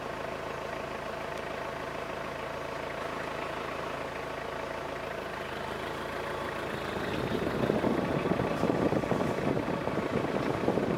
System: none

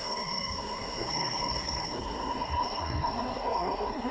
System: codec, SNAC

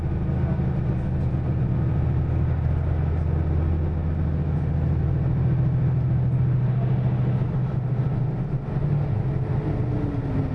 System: none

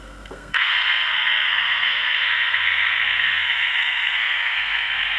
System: codec, SNAC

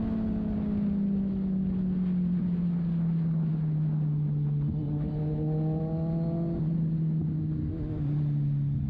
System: none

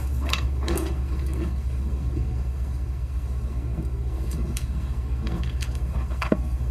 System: codec, SNAC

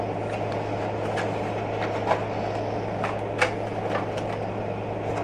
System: none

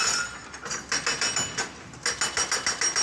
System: none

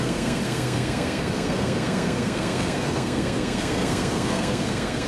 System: codec, SNAC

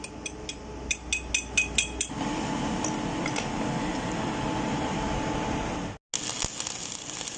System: none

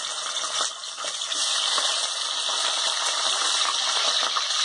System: none